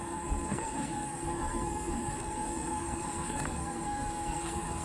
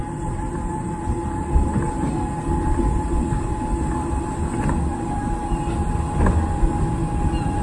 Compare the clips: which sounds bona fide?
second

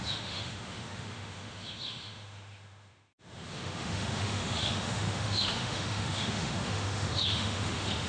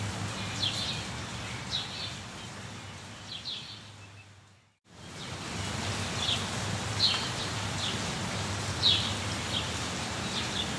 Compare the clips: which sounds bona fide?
second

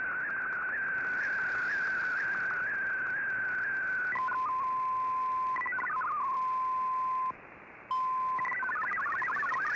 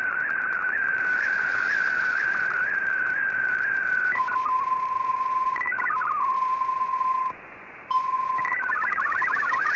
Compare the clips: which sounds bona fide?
first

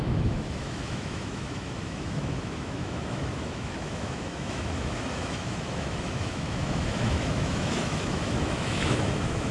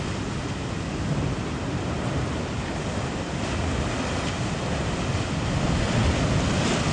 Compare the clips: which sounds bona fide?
second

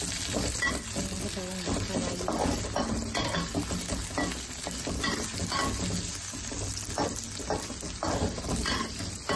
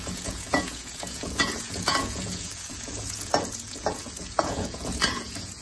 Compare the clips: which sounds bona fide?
first